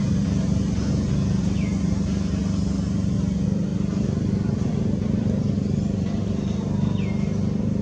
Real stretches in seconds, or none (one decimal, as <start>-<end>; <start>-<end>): 0.0-3.7; 6.4-7.8